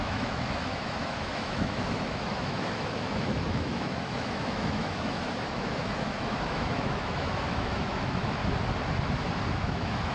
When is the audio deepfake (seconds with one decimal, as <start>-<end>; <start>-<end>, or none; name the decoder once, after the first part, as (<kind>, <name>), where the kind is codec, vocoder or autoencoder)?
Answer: 0.0-8.4 (autoencoder, DAC-VAE); 9.5-10.1